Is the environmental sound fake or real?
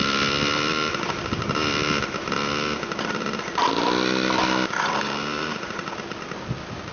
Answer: real